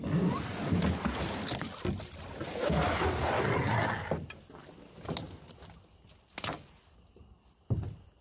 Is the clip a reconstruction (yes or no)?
no